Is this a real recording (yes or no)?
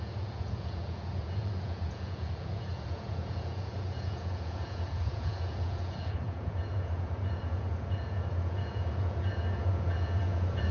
no